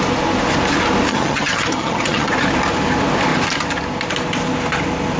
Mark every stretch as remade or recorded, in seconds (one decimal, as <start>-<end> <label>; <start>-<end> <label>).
0.0-1.1 recorded; 1.1-2.3 remade; 2.3-5.2 recorded